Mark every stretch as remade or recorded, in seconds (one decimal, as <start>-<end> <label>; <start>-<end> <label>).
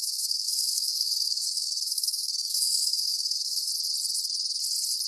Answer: 0.0-3.7 remade; 3.7-5.1 recorded